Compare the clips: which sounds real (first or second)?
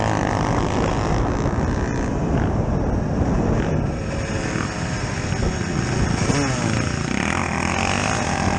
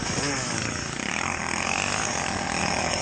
first